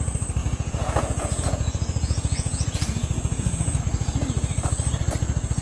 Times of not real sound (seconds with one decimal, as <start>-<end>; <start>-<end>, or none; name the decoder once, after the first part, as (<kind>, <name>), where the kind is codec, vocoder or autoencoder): 0.4-3.8 (vocoder, Vocos)